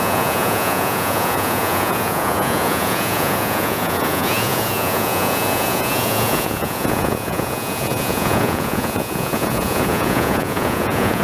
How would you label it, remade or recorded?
remade